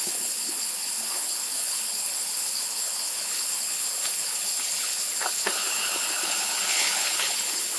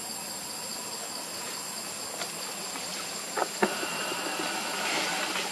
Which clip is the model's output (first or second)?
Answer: first